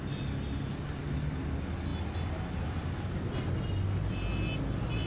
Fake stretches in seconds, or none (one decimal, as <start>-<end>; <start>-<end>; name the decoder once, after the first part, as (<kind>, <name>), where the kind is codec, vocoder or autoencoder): none